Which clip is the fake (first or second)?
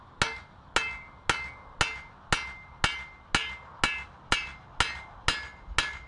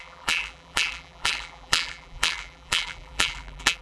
second